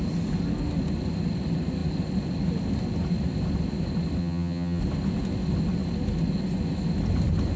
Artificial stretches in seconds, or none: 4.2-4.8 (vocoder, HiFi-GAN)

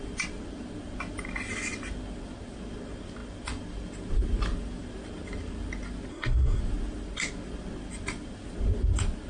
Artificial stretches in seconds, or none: 6.1-6.6 (codec, SNAC)

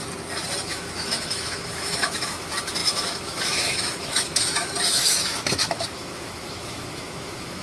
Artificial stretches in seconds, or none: 0.7-7.6 (autoencoder, DAC-VAE)

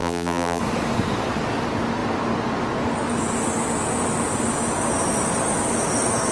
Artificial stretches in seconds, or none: 0.0-0.6 (vocoder, BigVGAN v2)

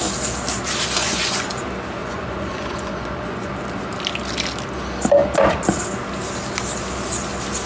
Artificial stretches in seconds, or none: 1.0-1.5 (vocoder, Vocos); 2.0-3.5

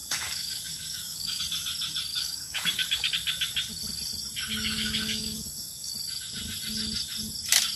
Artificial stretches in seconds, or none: 0.0-1.4 (codec, DAC); 2.1-3.1; 4.5-5.9

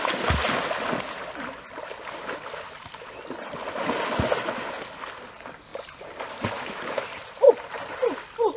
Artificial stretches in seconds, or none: none